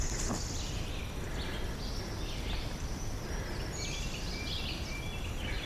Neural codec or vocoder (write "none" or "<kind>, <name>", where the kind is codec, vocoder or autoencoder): none